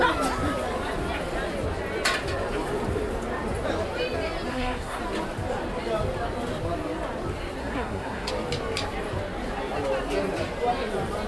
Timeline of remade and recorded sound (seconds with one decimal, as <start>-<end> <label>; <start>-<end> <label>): 0.0-4.5 recorded; 4.5-5.0 remade; 5.0-7.6 recorded; 7.6-8.3 remade; 8.3-11.3 recorded